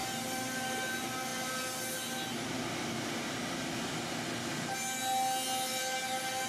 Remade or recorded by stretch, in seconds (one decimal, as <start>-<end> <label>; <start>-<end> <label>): 0.0-6.5 recorded